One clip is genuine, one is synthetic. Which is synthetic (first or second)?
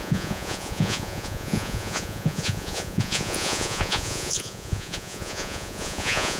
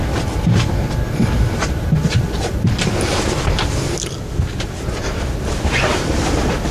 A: first